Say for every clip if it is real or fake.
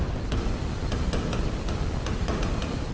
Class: real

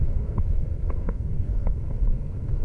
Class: fake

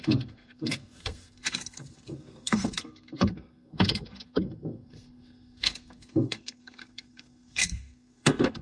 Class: fake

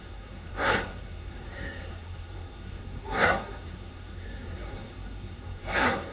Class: fake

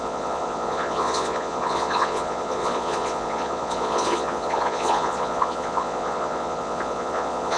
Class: fake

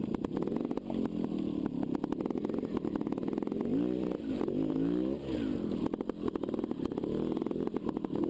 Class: fake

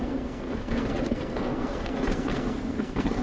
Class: fake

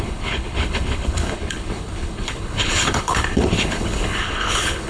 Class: fake